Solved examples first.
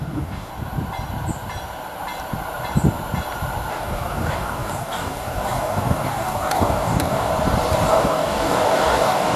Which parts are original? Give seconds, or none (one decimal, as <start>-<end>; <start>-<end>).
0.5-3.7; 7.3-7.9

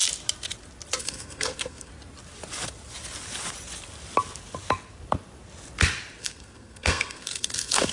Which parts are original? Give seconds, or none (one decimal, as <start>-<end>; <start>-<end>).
0.0-1.0; 1.9-6.2

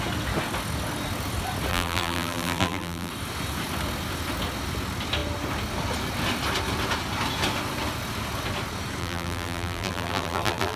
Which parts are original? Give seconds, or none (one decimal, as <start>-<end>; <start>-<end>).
0.0-1.7; 3.1-9.0

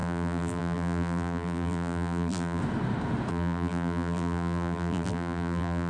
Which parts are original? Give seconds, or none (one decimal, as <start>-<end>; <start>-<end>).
2.6-3.3

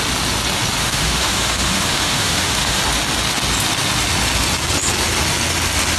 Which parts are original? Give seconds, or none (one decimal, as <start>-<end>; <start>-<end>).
0.0-0.8; 2.8-6.0

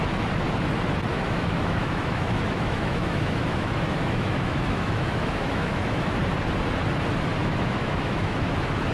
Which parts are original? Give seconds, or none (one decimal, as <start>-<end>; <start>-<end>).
0.0-1.1; 6.2-7.4

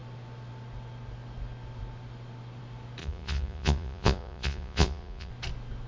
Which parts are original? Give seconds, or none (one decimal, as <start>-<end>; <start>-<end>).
0.0-3.0; 5.3-5.9

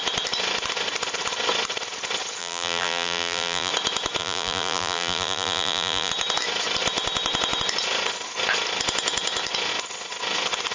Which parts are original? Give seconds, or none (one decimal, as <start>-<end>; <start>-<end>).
0.0-2.4; 3.7-4.2; 6.1-10.7